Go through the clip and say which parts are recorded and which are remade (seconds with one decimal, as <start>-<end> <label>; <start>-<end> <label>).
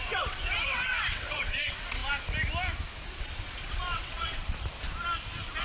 0.0-2.0 remade; 2.0-3.2 recorded; 3.2-4.4 remade; 4.4-5.6 recorded